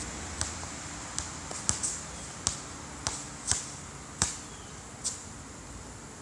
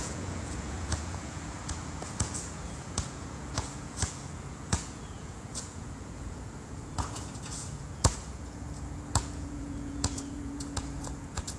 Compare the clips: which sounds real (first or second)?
first